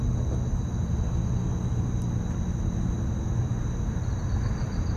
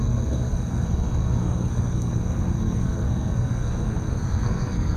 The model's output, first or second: second